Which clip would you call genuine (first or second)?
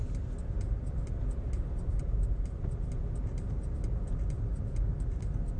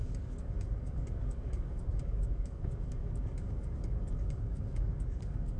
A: first